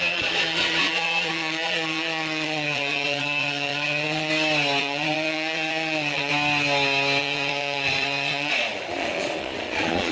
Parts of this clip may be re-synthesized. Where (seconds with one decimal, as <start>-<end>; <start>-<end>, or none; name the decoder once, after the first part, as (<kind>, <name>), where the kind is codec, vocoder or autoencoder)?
0.0-4.3 (vocoder, Vocos); 4.8-6.3; 7.2-10.1